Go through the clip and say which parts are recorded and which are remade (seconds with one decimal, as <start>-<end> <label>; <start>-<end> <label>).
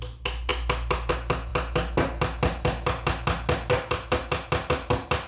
0.0-5.3 recorded